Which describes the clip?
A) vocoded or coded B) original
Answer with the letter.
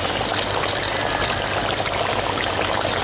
B